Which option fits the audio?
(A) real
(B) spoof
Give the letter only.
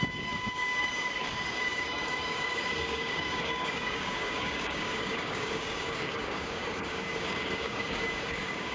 B